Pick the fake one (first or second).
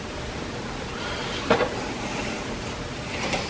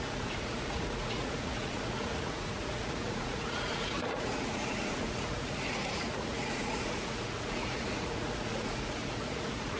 second